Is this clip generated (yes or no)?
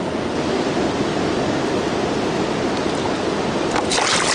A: no